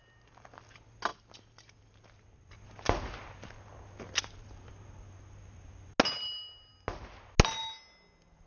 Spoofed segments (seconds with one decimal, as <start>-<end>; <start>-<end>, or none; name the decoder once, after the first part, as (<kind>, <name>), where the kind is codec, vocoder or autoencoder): none